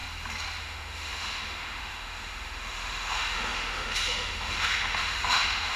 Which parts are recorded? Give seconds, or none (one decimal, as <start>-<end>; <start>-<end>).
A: 0.0-0.6

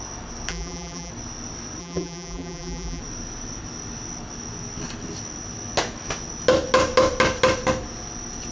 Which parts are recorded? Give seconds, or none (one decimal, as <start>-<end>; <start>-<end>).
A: 0.0-0.5; 1.1-1.8; 3.0-8.5

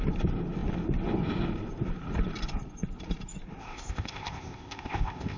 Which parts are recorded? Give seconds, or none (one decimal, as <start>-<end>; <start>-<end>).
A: 0.0-3.6

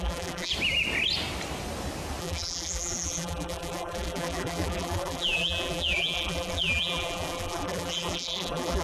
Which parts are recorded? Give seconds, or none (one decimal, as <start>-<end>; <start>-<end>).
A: 0.5-2.2

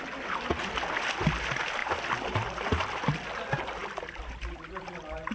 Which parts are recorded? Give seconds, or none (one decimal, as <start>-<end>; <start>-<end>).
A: 0.0-5.3

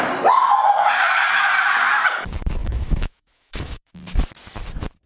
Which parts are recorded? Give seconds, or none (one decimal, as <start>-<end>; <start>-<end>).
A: 0.0-2.6; 3.9-5.1